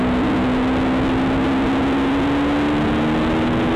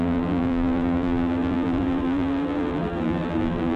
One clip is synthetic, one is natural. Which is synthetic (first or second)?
second